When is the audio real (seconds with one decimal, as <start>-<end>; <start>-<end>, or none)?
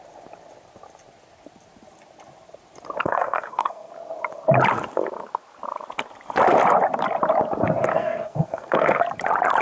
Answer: 0.0-3.0; 3.9-7.9; 9.0-9.6